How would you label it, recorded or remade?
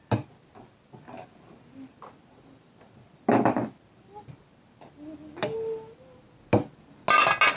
recorded